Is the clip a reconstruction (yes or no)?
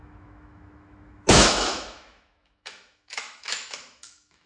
yes